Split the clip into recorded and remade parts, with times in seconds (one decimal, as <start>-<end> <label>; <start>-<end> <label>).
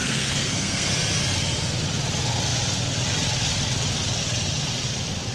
0.0-0.9 remade; 0.9-5.3 recorded